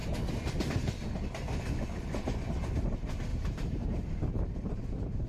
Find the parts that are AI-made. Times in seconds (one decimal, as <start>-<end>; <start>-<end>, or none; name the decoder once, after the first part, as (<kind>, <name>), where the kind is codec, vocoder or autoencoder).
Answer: 3.3-5.3 (vocoder, BigVGAN v2)